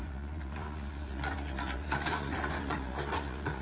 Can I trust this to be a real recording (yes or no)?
no